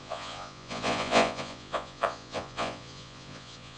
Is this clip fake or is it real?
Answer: fake